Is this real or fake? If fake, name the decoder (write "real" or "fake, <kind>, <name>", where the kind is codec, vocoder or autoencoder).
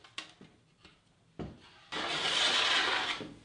real